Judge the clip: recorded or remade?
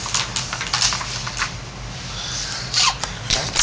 recorded